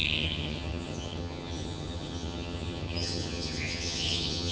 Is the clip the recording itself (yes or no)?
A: no